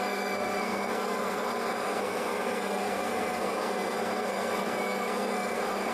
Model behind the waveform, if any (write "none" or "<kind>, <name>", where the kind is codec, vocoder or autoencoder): codec, SNAC